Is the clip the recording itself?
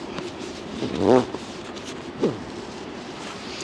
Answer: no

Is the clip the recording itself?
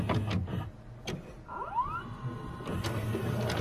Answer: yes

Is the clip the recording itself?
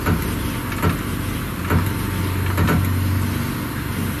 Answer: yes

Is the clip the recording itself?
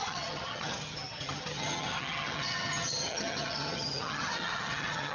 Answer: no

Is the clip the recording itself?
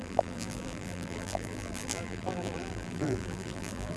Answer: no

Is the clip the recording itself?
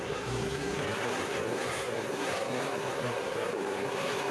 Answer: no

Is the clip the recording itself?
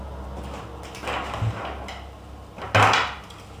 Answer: yes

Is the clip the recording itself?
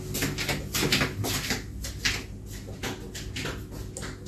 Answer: yes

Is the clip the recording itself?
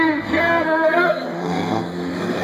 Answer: no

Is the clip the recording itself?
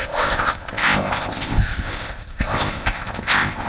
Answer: no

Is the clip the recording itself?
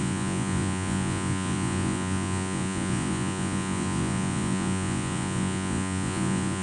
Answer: no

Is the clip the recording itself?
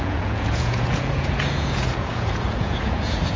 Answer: no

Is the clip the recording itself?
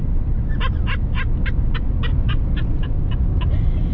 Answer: yes